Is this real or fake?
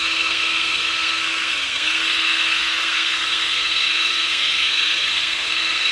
fake